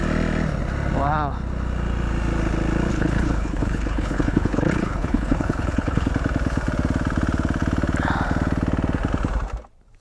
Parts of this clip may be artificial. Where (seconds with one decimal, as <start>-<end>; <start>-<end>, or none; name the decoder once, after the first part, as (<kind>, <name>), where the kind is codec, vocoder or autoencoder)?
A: 2.9-6.1 (codec, HILCodec)